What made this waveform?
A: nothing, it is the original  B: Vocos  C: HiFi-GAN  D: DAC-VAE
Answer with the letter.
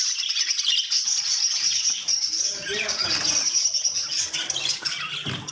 A